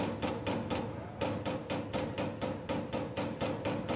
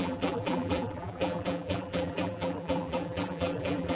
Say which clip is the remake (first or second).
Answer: second